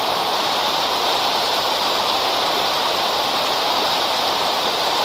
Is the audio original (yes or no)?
no